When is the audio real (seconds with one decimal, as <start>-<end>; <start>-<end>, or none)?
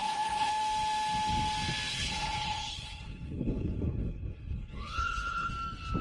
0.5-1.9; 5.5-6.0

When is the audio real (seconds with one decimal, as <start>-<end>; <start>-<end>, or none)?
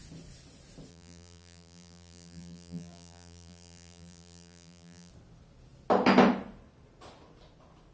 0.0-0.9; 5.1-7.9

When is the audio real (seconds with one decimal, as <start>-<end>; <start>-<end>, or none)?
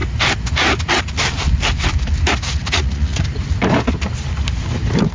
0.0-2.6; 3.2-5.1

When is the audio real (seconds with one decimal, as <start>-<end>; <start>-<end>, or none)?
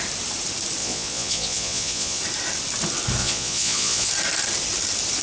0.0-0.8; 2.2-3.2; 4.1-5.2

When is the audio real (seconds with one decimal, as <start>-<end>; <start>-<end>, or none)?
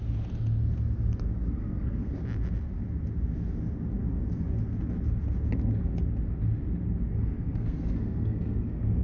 0.0-1.6; 2.1-7.1